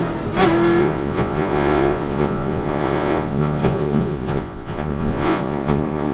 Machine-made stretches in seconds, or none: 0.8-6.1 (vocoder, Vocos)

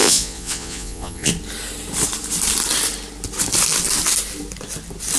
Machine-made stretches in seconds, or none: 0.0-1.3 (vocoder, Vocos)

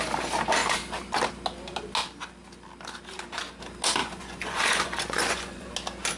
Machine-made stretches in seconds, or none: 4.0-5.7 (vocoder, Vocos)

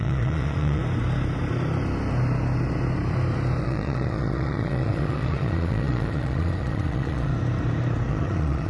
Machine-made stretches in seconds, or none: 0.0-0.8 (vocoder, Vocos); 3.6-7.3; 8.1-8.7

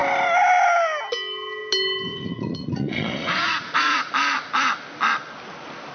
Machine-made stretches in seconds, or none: 2.1-4.1 (vocoder, Vocos)

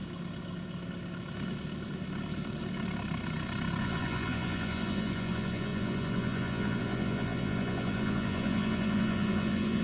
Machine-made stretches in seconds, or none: 3.8-9.8 (vocoder, Vocos)

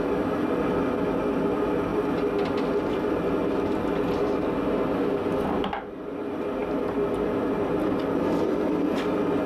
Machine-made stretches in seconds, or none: none

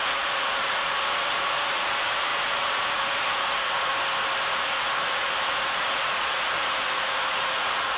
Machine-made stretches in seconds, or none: 0.0-3.9 (vocoder, Vocos); 4.5-8.0